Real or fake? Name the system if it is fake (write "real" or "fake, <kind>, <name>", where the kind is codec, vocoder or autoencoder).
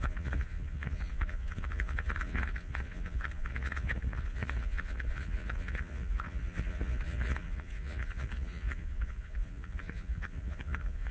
fake, vocoder, Vocos